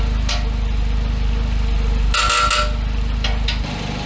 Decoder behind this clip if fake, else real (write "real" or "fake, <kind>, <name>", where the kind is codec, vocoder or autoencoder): real